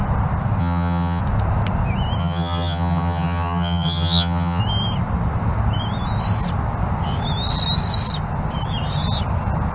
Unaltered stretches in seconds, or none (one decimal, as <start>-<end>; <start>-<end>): 0.0-0.6; 1.2-2.2; 4.6-9.7

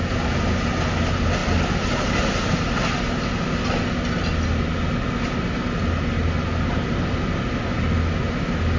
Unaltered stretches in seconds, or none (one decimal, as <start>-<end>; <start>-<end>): 0.0-8.8

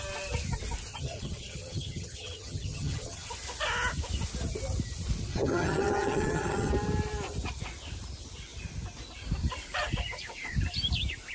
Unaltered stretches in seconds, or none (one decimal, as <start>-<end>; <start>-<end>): 0.0-0.9; 3.3-5.3; 6.7-11.3

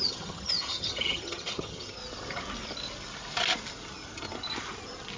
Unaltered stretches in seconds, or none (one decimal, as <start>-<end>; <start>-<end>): 2.0-5.2

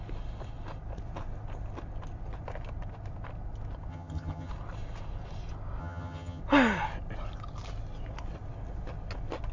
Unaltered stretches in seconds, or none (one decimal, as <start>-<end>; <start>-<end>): 0.0-3.9; 4.5-5.8; 6.4-9.5

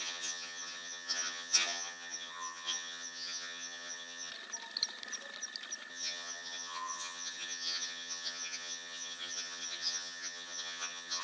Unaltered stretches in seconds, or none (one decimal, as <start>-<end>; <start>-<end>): 4.3-5.9

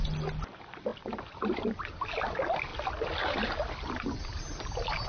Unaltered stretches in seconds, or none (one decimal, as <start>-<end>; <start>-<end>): 0.0-5.1